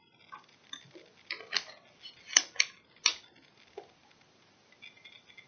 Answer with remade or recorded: recorded